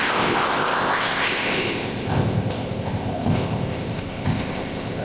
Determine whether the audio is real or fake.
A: fake